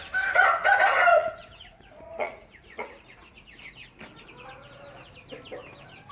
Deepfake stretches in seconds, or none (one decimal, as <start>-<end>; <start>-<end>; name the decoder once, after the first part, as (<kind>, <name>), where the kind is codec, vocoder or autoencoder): 1.1-3.6 (vocoder, Vocos)